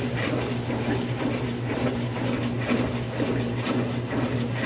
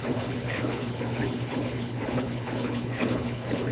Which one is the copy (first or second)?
second